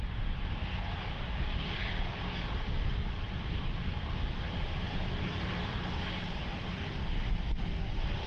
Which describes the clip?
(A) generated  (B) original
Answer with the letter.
B